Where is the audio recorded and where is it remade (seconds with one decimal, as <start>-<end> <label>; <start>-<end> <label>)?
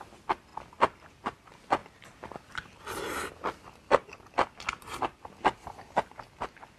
0.0-6.8 recorded